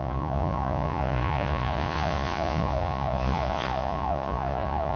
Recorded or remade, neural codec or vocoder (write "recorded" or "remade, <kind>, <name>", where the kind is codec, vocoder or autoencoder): remade, vocoder, Vocos